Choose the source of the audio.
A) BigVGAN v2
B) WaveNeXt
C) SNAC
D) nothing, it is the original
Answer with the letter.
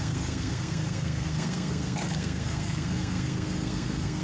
C